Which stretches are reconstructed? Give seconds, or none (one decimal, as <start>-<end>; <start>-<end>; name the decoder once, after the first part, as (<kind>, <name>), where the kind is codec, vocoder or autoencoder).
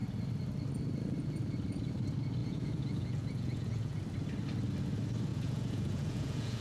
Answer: 2.4-4.0 (vocoder, Vocos); 5.3-6.6